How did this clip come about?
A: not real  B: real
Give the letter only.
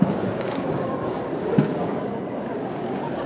A